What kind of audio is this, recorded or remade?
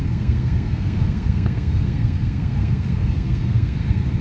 remade